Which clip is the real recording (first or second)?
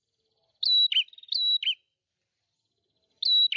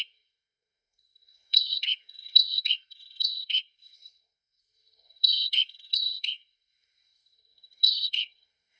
first